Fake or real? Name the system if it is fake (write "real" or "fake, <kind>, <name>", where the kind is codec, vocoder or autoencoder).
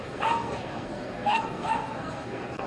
fake, codec, SNAC